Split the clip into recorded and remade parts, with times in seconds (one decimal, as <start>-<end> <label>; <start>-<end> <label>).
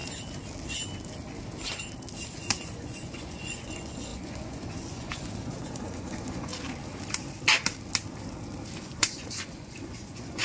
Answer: 0.0-2.4 recorded; 2.4-6.5 remade; 6.5-8.8 recorded; 8.8-10.4 remade